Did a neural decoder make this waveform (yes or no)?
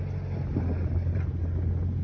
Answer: no